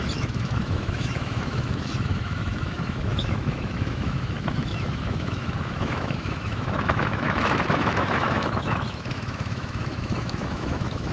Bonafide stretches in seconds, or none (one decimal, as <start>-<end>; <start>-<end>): none